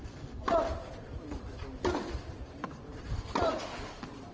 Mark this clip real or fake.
real